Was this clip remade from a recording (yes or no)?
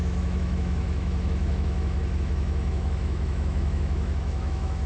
yes